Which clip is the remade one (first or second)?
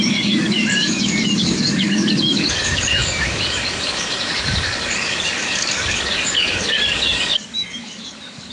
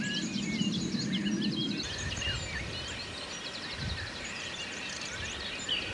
first